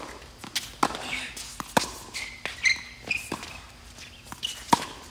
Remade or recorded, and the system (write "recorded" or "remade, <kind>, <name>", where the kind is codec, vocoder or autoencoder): recorded